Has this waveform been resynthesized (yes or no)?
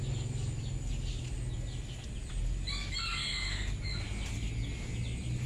no